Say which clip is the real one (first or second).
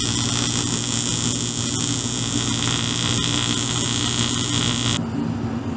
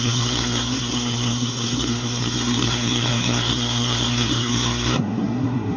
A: first